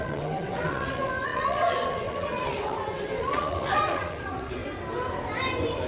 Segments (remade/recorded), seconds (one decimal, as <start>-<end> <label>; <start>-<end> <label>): 0.0-4.6 remade; 4.6-5.9 recorded